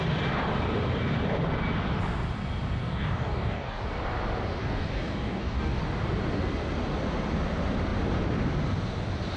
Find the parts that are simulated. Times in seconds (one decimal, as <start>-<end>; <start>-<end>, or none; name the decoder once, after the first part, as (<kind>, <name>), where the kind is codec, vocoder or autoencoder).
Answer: 2.8-3.8 (codec, DAC); 4.6-5.8